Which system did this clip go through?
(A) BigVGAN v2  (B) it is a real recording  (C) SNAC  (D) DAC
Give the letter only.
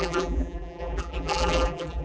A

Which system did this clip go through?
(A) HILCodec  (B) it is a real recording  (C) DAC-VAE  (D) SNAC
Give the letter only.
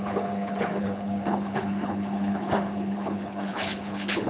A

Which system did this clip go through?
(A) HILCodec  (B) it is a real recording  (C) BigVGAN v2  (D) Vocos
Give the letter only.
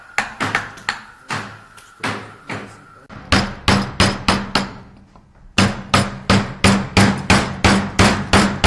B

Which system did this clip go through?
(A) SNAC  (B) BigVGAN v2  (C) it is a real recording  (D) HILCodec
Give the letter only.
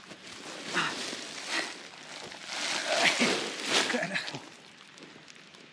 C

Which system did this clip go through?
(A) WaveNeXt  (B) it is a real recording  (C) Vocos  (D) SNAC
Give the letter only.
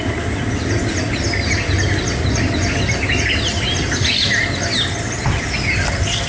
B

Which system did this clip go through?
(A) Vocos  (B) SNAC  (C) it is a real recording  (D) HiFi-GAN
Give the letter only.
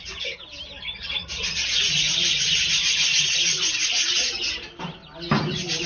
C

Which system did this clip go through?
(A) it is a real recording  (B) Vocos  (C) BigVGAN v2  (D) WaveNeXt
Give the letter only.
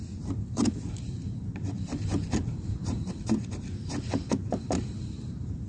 C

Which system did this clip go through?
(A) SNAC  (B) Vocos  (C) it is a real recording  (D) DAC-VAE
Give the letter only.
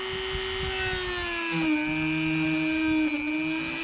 C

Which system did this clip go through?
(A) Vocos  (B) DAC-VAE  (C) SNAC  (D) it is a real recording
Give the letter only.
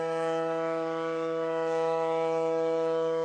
B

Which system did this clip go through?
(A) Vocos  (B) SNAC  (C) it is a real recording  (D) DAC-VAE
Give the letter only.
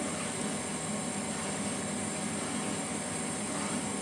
C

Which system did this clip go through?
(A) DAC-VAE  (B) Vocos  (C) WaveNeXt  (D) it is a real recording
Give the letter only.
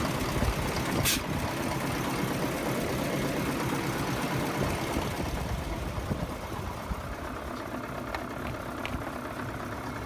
D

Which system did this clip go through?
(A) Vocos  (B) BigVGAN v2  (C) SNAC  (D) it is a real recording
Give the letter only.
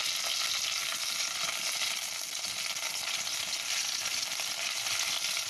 D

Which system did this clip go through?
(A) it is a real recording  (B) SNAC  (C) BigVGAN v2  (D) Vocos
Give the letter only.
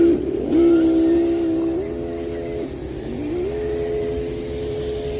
A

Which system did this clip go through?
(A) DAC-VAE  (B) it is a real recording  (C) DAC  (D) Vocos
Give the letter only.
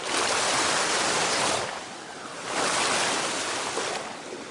B